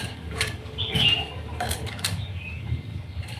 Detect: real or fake fake